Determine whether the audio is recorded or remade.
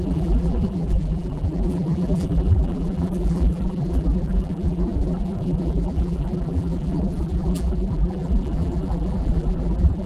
remade